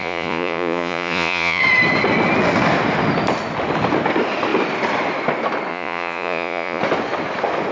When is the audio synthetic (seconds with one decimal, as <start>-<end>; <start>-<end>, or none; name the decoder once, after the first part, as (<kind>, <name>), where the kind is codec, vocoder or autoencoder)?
0.0-1.6 (vocoder, Vocos); 5.7-6.8